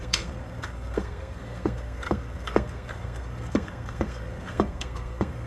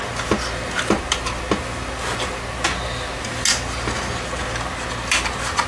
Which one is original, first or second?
second